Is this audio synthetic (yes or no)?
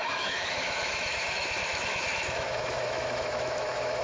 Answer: yes